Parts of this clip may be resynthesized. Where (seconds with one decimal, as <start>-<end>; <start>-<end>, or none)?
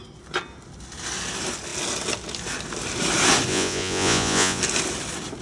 3.5-4.6